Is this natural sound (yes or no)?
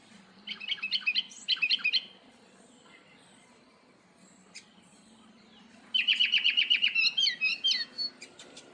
yes